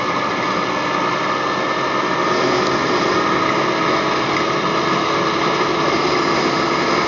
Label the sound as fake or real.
real